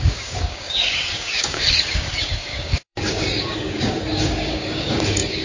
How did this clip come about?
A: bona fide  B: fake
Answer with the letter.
B